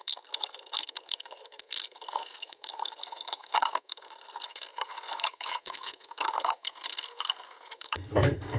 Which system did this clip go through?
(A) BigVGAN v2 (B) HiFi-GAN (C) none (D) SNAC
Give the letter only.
D